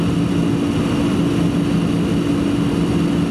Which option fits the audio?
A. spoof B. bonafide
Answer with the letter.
B